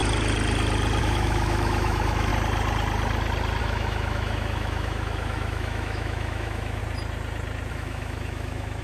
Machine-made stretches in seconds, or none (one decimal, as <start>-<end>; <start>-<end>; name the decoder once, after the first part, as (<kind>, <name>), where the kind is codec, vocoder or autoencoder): 1.0-2.3 (autoencoder, DAC-VAE); 3.6-6.8; 7.7-8.8